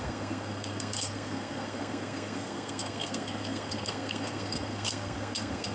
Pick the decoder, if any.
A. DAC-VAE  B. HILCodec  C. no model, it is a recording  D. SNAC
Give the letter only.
D